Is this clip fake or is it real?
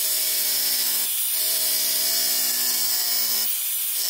real